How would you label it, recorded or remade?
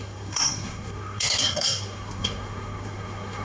remade